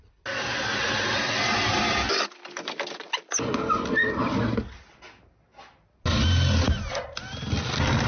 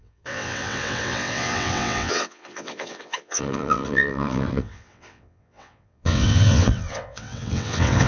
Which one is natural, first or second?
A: first